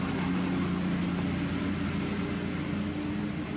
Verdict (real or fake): real